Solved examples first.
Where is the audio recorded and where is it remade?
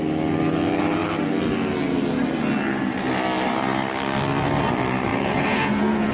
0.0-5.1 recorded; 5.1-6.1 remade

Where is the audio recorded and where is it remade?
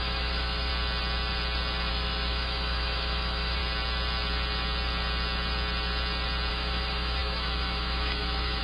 0.0-0.7 remade; 0.7-1.9 recorded; 1.9-3.6 remade; 3.6-6.5 recorded; 6.5-8.6 remade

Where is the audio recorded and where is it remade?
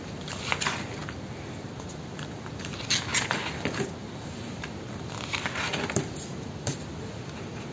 0.0-7.7 recorded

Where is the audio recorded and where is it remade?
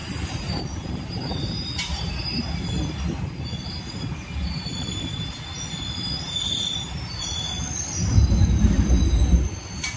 0.0-2.1 remade; 2.1-4.7 recorded; 4.7-5.3 remade; 5.3-10.0 recorded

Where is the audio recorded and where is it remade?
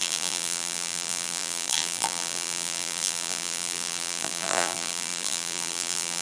0.0-6.2 remade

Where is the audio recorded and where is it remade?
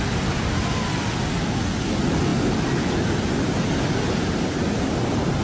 0.0-5.4 recorded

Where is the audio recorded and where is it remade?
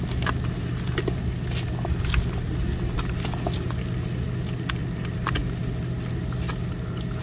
0.0-7.2 recorded